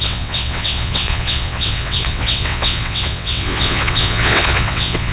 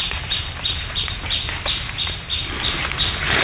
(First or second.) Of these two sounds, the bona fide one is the second